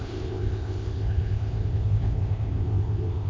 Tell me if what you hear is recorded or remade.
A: remade